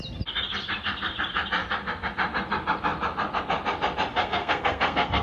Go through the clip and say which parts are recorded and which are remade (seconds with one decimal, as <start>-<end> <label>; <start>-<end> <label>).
0.0-4.1 recorded; 4.1-5.2 remade